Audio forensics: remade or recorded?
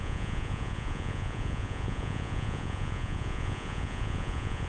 remade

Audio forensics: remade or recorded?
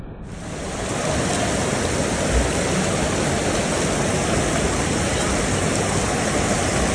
recorded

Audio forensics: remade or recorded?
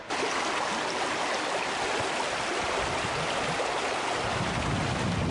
recorded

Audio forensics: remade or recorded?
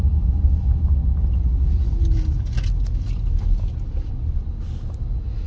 recorded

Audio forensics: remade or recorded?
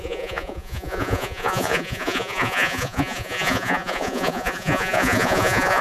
remade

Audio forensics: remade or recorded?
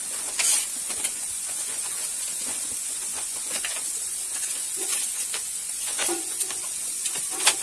remade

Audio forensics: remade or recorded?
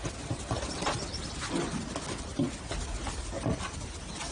recorded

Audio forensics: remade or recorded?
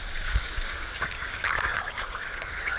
remade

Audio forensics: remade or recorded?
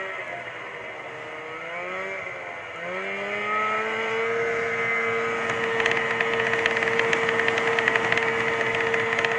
recorded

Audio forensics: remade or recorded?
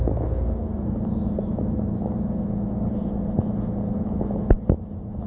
recorded